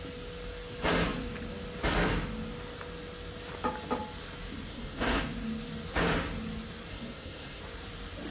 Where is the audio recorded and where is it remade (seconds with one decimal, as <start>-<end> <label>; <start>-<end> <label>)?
0.0-4.7 recorded; 4.7-5.2 remade; 5.2-6.9 recorded; 6.9-7.6 remade; 7.6-8.3 recorded